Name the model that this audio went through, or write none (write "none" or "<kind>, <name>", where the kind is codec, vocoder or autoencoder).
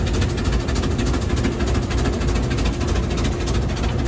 none